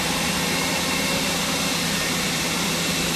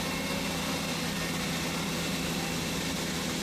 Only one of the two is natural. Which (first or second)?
second